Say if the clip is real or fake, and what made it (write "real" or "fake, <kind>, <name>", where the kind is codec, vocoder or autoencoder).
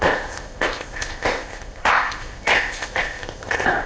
fake, codec, ZipCodec